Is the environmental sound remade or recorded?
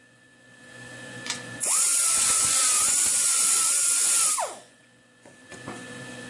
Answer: remade